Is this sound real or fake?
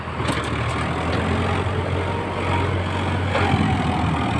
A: real